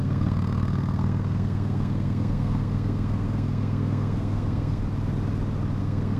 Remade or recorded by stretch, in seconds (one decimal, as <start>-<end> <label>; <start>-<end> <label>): 0.0-4.8 remade; 4.8-5.8 recorded; 5.8-6.2 remade